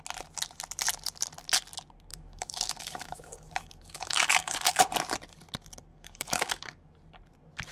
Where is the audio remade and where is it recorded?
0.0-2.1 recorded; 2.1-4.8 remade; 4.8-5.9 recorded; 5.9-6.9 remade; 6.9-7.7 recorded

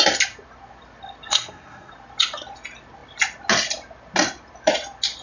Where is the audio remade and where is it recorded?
0.0-1.3 recorded; 1.3-1.9 remade; 1.9-5.2 recorded

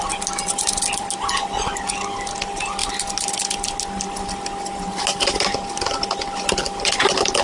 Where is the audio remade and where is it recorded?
0.0-7.4 recorded

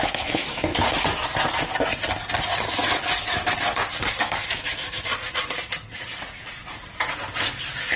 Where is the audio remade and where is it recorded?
0.0-0.7 remade; 0.7-4.2 recorded; 4.2-5.1 remade; 5.1-8.0 recorded